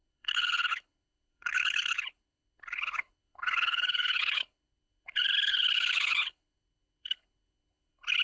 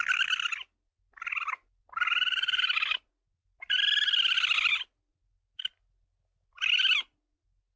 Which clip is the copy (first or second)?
first